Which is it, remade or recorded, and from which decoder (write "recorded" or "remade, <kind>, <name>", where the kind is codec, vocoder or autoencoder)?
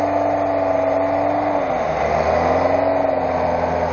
recorded